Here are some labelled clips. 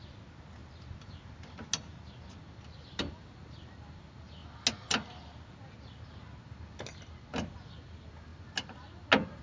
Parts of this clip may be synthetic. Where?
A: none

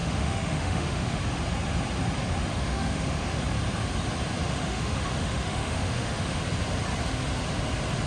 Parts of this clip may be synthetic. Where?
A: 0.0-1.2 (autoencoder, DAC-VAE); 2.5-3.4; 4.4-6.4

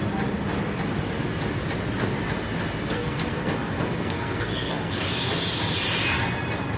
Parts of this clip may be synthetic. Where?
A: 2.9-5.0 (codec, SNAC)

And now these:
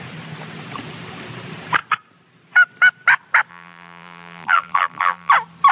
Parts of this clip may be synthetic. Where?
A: 3.5-5.3 (vocoder, BigVGAN v2)

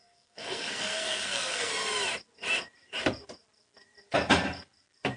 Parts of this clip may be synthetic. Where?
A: 0.0-1.7 (codec, SNAC)

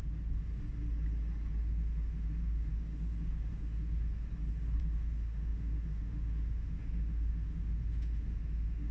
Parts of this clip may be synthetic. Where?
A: 0.0-0.5 (autoencoder, DAC-VAE); 1.6-4.3; 4.8-8.9